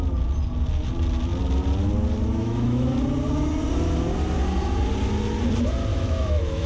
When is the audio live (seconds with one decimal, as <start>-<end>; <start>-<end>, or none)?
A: 0.0-2.4; 2.9-5.9